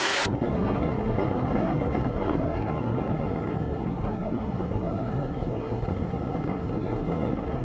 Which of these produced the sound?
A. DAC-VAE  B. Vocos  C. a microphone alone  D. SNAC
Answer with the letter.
D